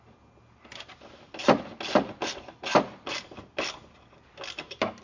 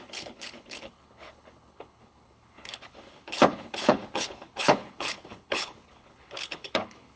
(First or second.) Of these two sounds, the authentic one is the first